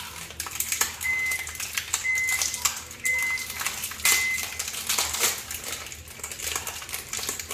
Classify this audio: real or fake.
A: real